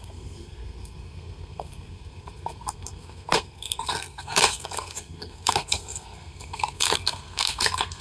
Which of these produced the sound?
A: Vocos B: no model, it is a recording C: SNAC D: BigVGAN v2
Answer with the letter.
C